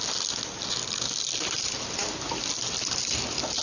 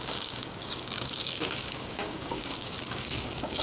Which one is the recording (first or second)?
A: first